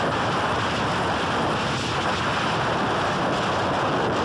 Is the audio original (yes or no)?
yes